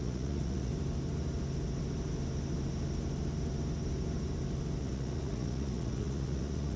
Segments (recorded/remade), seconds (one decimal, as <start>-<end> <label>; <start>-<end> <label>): 0.0-0.7 remade; 0.7-4.8 recorded; 4.8-6.8 remade